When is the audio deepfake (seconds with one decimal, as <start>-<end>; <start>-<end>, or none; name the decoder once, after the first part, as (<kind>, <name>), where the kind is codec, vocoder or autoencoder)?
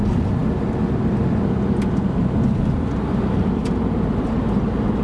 none